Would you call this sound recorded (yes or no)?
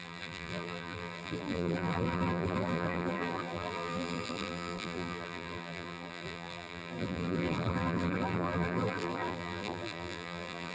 no